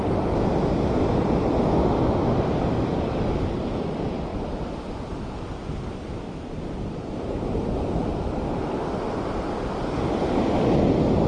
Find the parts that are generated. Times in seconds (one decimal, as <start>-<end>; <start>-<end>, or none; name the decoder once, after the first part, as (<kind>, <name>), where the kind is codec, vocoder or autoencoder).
none